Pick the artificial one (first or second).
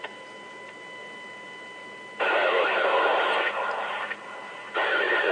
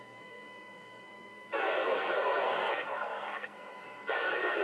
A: second